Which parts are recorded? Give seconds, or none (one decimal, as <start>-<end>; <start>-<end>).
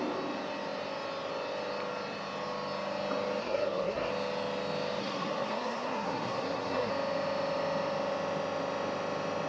0.0-3.4; 4.1-5.0; 6.9-9.5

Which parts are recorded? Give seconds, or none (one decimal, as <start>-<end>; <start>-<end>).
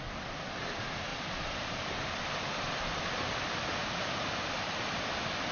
0.0-1.1; 3.0-5.5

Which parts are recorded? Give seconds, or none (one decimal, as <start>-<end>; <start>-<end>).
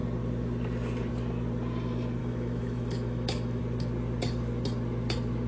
0.0-2.2; 3.6-5.5